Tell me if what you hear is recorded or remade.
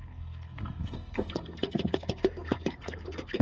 remade